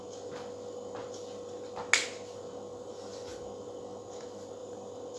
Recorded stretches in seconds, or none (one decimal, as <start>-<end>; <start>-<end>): 0.0-1.0; 1.8-4.6